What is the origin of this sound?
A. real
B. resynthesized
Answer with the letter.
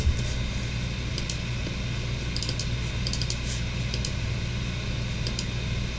A